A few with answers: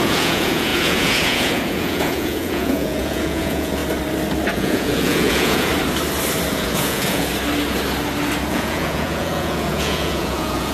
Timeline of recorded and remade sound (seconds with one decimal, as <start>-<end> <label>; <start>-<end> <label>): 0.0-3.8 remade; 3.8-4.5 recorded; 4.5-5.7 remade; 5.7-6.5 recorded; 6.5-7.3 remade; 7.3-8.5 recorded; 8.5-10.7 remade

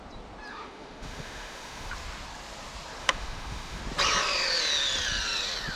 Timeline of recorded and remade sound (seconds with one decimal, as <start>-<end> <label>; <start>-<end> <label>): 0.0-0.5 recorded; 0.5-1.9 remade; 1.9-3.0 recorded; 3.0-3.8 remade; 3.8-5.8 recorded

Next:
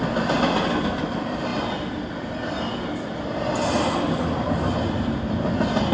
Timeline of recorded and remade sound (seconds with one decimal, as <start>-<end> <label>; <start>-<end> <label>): 0.0-5.9 recorded

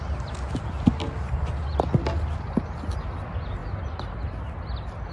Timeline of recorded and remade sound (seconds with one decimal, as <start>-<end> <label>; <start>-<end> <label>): 0.0-5.1 recorded